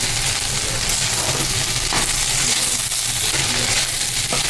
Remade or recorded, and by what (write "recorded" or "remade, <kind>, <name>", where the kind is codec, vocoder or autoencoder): recorded